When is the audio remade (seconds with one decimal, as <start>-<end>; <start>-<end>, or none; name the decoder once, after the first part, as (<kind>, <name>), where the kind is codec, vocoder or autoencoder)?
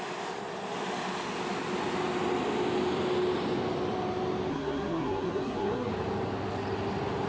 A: 4.5-5.9 (codec, SNAC)